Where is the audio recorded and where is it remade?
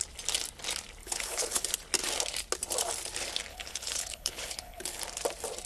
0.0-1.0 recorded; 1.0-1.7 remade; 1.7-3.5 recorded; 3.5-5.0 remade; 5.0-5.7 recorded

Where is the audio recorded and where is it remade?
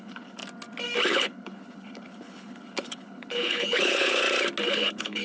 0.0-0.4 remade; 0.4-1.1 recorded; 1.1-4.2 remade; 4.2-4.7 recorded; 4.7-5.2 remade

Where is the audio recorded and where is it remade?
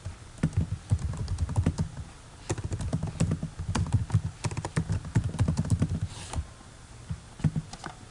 0.0-8.1 recorded